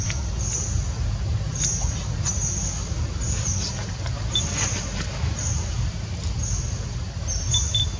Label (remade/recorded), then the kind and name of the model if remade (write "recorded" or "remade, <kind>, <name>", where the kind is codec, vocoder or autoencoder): recorded